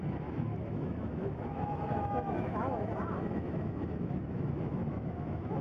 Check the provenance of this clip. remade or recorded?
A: remade